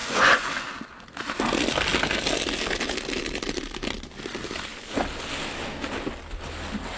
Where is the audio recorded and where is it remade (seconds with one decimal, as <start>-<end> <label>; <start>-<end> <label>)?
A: 0.0-0.5 remade; 0.5-7.0 recorded